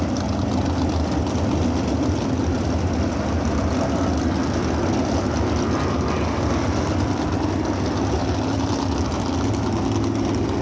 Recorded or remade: recorded